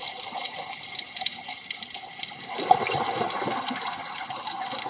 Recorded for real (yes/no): yes